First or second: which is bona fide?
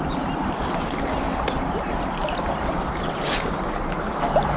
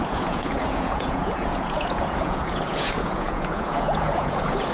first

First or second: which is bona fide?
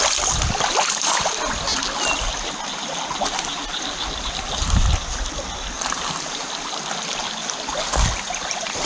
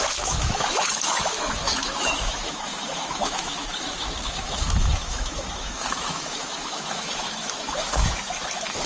first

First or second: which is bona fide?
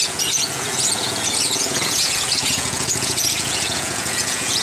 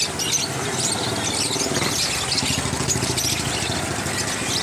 second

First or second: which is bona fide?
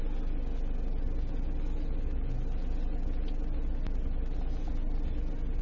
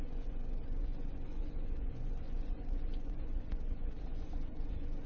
first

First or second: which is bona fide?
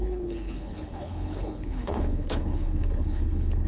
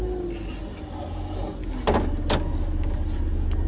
second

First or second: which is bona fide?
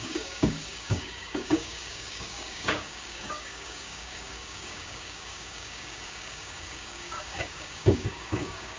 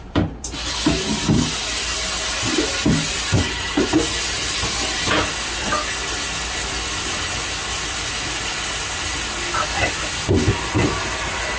second